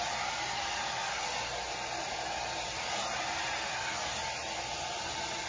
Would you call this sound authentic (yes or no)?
yes